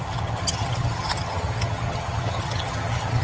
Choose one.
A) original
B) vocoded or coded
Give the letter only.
B